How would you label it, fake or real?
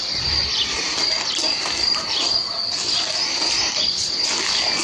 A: real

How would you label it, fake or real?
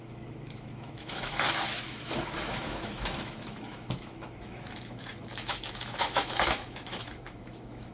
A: fake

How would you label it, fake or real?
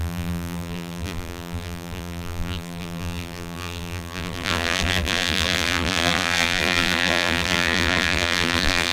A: fake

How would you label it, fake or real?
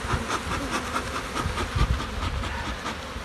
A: real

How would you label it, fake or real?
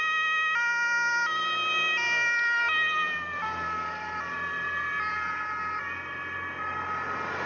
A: real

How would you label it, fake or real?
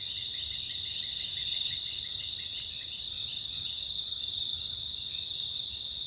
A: real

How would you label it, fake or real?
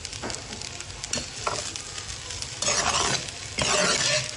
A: real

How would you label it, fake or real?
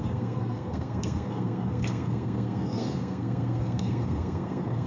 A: fake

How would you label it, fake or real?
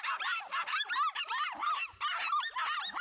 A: real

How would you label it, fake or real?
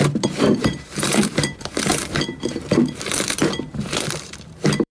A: fake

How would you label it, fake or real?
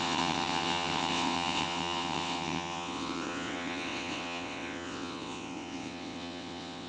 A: fake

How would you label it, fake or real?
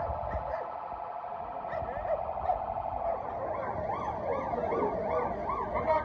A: real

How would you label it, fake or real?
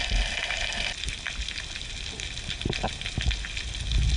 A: real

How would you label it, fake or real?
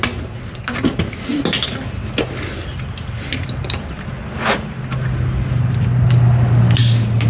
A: real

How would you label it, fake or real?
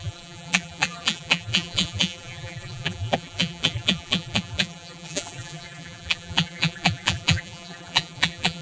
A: fake